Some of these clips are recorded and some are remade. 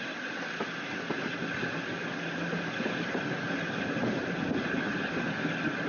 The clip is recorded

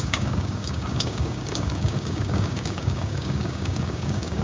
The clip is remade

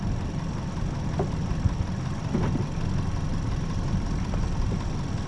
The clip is recorded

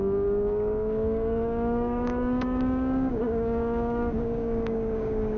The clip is remade